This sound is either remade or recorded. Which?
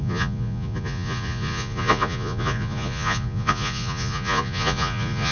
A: remade